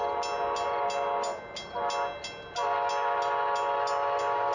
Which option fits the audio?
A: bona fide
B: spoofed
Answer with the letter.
A